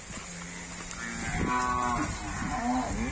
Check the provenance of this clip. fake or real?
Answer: real